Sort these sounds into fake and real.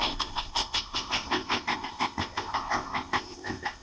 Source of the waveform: fake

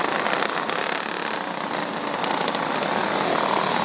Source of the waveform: real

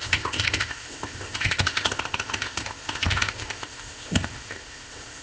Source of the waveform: fake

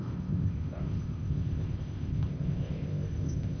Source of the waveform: fake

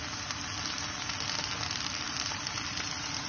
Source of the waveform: real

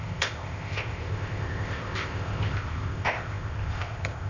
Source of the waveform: fake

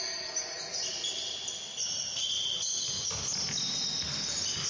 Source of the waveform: real